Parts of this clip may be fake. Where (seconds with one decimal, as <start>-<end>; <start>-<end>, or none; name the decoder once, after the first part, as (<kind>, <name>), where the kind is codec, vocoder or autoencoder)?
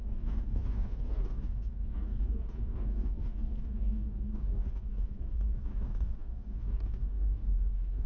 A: 0.0-8.1 (codec, DAC)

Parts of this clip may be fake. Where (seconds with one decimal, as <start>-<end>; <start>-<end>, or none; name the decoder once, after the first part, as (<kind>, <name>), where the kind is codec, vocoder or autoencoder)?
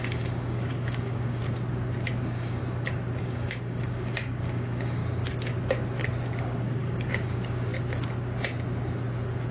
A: 0.0-1.4 (codec, DAC); 2.2-2.6; 3.2-5.0; 6.4-7.7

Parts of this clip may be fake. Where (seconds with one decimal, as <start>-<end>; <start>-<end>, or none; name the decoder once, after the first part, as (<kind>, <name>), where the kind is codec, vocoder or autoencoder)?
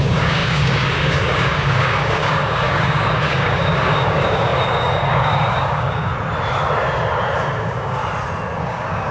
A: 0.0-6.1 (codec, DAC); 7.4-8.0; 8.6-9.1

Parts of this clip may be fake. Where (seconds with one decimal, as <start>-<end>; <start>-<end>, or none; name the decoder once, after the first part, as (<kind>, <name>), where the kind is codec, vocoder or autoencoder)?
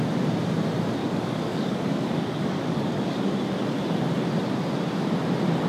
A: 1.0-3.4 (codec, DAC)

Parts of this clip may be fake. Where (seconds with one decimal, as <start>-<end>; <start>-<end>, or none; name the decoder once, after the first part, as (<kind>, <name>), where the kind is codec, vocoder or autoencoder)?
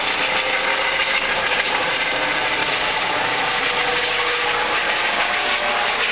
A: 0.7-1.9 (codec, DAC); 2.6-3.4; 3.9-4.8; 5.2-6.1